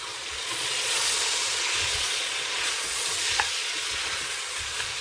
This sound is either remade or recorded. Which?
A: remade